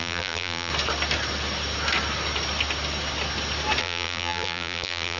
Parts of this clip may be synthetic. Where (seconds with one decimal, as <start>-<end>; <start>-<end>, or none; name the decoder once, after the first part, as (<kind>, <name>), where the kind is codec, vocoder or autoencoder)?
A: 0.0-0.7 (vocoder, BigVGAN v2); 3.8-5.2